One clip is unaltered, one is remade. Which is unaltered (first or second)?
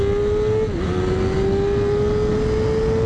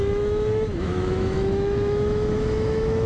first